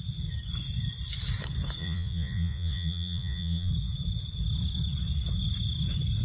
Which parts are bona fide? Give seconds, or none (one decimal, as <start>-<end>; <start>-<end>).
0.0-1.8; 3.7-6.2